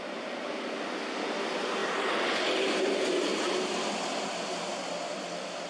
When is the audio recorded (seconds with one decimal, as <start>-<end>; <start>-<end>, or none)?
0.0-5.7